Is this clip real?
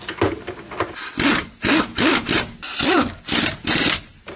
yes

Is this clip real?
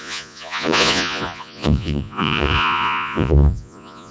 no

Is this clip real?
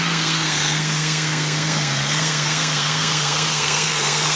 no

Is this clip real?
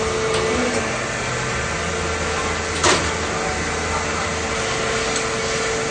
yes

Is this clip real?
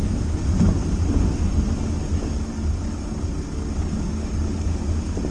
yes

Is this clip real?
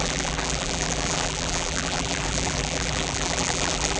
no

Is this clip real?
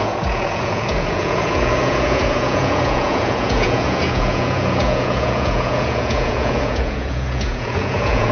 no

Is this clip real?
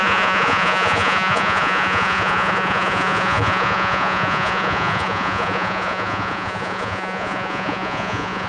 no